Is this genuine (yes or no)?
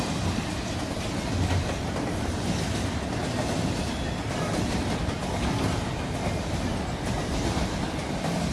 yes